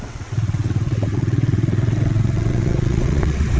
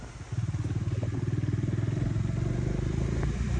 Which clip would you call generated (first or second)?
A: first